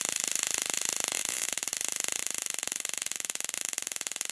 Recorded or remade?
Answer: remade